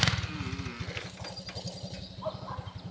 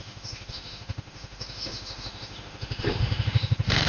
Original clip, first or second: first